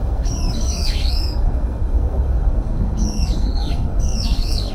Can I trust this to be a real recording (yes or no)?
no